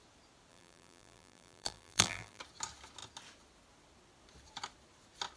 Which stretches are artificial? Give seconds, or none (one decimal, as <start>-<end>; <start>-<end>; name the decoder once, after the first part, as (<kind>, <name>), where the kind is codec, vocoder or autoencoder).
0.5-2.4 (vocoder, BigVGAN v2)